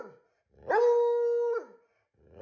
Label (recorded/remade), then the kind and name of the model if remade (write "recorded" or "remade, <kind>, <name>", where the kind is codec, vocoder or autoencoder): recorded